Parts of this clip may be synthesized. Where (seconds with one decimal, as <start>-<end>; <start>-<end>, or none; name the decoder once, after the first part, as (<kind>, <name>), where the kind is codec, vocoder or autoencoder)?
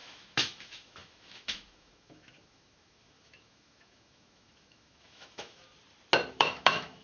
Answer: 0.0-5.7 (autoencoder, DAC-VAE); 6.3-7.0